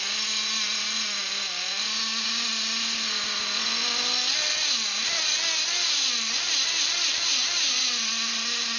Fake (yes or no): no